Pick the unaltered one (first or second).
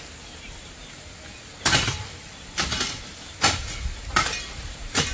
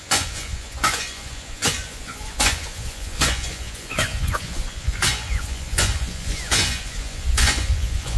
first